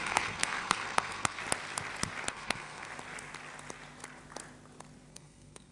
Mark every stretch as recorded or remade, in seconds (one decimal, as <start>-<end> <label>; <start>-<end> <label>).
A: 0.0-1.4 remade; 1.4-2.3 recorded; 2.3-2.9 remade; 2.9-5.1 recorded; 5.1-5.7 remade